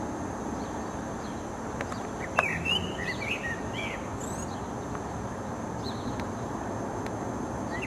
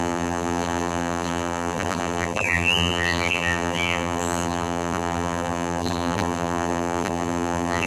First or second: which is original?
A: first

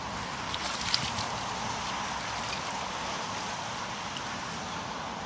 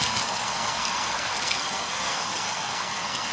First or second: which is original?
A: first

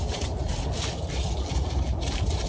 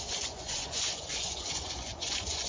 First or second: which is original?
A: first